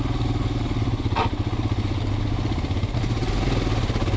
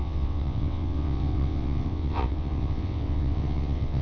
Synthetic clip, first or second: second